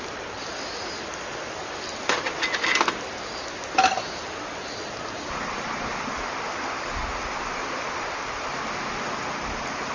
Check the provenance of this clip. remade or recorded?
recorded